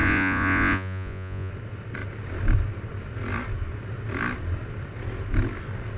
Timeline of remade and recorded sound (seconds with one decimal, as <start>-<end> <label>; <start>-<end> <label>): 0.0-1.5 remade; 1.5-6.0 recorded